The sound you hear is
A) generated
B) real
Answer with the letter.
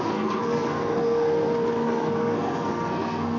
A